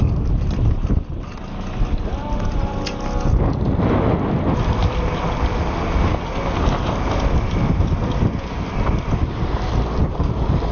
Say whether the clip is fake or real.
real